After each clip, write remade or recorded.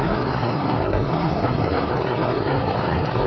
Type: remade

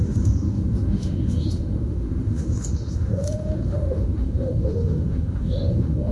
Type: remade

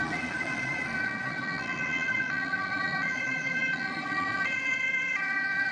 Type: remade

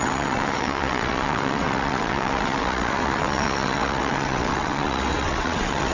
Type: remade